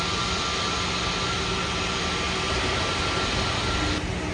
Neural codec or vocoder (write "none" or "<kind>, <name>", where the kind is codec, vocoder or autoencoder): none